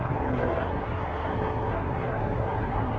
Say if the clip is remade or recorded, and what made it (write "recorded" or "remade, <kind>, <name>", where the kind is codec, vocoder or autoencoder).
remade, codec, SNAC